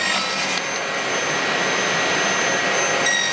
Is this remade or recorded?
recorded